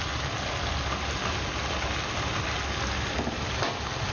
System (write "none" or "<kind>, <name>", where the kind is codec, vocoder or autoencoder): none